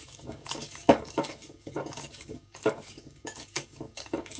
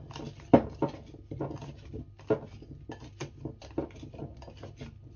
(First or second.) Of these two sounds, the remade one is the first